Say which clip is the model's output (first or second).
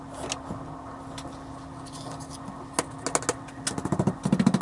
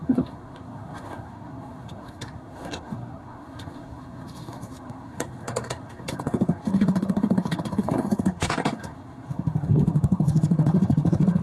second